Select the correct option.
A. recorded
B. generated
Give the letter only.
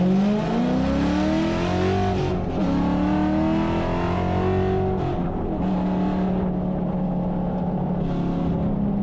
A